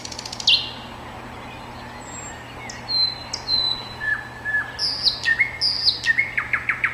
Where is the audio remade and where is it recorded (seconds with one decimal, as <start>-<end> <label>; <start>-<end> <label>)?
0.0-3.5 recorded; 3.5-4.1 remade; 4.1-6.9 recorded

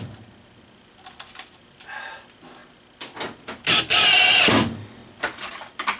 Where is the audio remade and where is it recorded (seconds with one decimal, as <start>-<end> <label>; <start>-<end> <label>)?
0.0-6.0 recorded